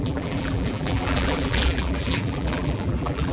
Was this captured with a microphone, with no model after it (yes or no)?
no